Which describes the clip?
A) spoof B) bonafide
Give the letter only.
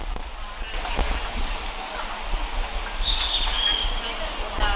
B